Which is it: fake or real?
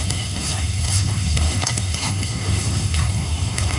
fake